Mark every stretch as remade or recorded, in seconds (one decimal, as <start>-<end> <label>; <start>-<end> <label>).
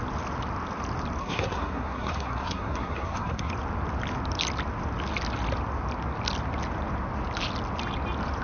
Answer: 0.0-1.2 recorded; 1.2-3.5 remade; 3.5-8.4 recorded